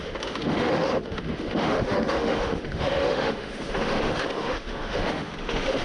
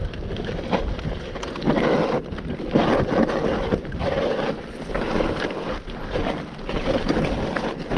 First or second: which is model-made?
first